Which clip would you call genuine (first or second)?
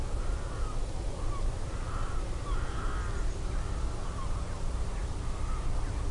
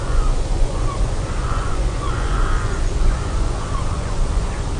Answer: first